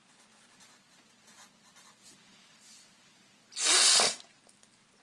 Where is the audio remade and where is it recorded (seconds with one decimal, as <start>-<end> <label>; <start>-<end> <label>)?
0.0-5.0 recorded